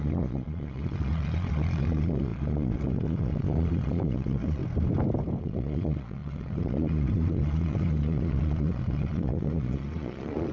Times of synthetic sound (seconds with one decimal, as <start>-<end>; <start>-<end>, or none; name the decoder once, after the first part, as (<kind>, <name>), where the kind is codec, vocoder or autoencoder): 0.0-4.6 (vocoder, Vocos); 5.4-10.5